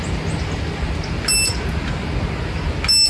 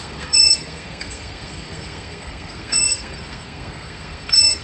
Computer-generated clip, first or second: second